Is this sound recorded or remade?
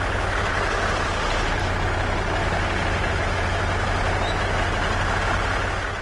recorded